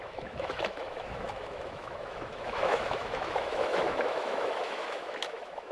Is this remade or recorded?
remade